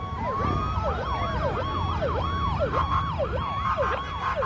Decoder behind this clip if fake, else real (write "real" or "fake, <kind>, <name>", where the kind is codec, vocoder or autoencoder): real